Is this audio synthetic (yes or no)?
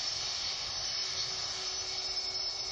no